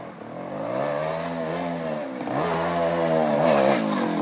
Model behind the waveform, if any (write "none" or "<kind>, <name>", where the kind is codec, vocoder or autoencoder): none